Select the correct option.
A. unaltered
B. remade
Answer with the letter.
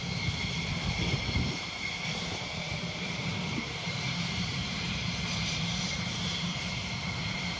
B